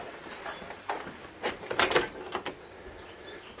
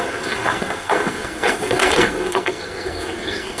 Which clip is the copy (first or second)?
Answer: second